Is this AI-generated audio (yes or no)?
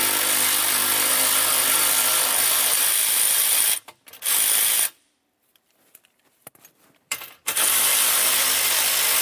yes